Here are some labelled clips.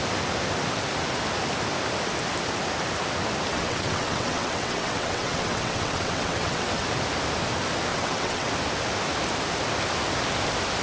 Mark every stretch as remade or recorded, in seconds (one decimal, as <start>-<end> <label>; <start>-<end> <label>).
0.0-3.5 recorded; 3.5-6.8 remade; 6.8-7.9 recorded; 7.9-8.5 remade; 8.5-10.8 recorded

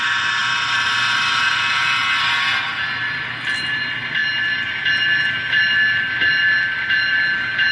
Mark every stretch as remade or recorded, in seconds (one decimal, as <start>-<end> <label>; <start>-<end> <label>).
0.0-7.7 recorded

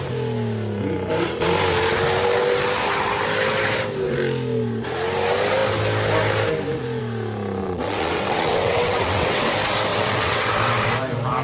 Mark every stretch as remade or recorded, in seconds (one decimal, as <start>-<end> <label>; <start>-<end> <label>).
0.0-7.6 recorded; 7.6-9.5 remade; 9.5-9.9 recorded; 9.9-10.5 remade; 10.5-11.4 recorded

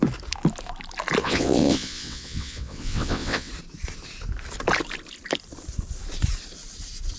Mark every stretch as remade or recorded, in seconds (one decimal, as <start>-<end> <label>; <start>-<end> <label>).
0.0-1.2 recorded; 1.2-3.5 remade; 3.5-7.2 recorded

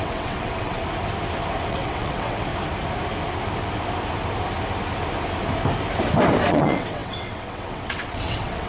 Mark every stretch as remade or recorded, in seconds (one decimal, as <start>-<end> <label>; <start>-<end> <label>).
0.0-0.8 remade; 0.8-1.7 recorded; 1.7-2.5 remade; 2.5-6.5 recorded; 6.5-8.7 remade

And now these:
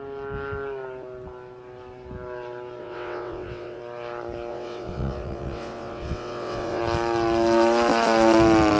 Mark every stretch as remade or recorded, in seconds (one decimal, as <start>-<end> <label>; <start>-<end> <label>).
0.0-2.8 recorded; 2.8-3.8 remade; 3.8-4.5 recorded; 4.5-6.8 remade; 6.8-8.8 recorded

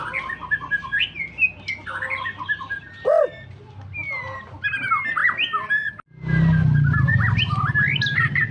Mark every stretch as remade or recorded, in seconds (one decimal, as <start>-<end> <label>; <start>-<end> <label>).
0.0-8.5 recorded